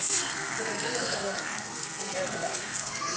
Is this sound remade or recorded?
remade